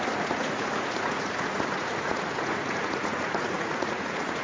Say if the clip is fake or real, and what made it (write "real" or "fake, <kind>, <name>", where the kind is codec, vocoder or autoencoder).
fake, vocoder, Vocos